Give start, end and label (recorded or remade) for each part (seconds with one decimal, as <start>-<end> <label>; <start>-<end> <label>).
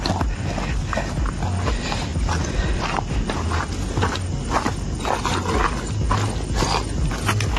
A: 0.0-7.6 recorded